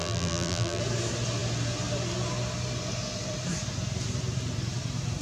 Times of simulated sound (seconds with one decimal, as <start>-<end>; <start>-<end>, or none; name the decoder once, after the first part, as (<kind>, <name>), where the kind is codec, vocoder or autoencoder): 0.0-0.8 (vocoder, BigVGAN v2)